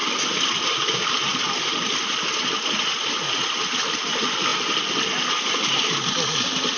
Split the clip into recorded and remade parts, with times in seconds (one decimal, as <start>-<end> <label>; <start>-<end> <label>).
0.0-6.8 recorded